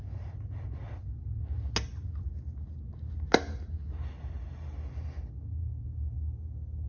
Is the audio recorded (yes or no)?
yes